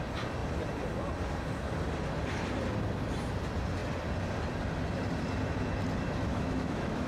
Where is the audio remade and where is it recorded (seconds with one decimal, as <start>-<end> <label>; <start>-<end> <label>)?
0.0-6.3 recorded; 6.3-7.1 remade